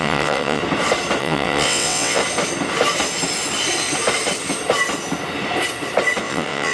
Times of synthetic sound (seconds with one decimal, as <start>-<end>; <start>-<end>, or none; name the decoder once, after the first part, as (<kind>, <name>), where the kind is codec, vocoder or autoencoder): 0.0-0.6 (vocoder, WaveNeXt); 1.2-2.2; 6.2-6.7